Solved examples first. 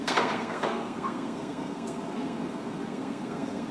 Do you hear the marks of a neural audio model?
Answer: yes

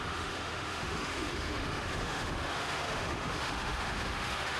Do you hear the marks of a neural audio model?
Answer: yes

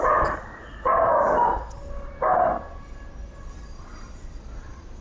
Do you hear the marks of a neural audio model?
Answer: no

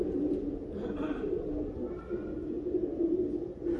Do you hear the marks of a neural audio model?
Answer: no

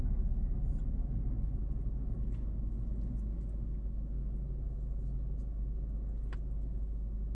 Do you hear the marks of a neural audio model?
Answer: no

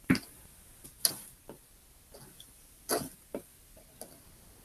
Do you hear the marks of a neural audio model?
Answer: no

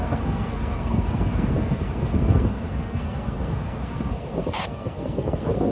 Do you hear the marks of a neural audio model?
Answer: yes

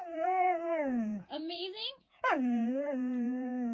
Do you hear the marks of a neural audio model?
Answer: yes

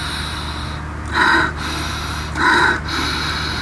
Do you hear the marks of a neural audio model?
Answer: no